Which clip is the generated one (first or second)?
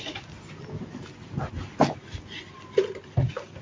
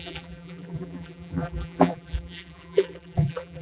second